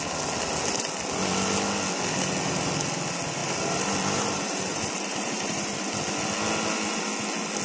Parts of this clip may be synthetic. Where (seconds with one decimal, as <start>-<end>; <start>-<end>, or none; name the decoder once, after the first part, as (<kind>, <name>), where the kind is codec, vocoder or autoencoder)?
3.4-5.9 (vocoder, BigVGAN v2)